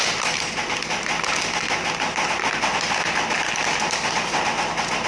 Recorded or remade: recorded